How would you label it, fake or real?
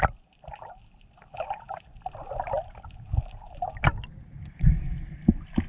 real